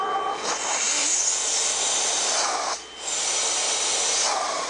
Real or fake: real